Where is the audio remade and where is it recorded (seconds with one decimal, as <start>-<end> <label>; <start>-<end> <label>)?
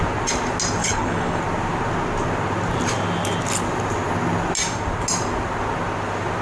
0.0-0.8 recorded; 0.8-1.4 remade; 1.4-6.4 recorded